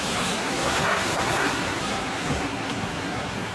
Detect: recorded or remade remade